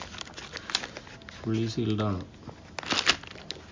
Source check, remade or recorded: recorded